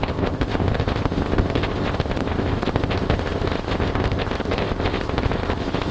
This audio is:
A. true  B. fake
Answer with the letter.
B